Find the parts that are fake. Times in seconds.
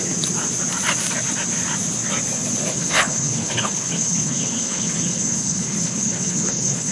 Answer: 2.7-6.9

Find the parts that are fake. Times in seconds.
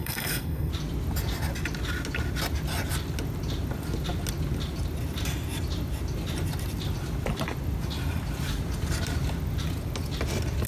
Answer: 0.0-0.7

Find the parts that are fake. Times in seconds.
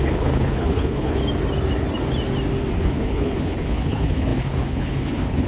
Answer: 0.0-1.2; 2.8-5.5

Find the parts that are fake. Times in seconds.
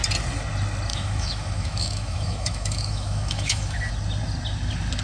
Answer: 0.9-3.9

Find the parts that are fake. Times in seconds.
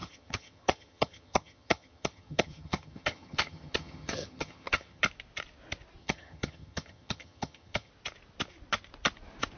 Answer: 0.0-5.0; 6.0-7.9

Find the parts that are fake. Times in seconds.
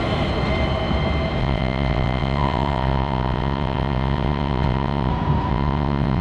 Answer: 1.4-5.1; 5.5-6.2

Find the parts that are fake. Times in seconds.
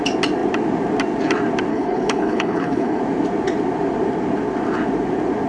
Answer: 1.7-3.0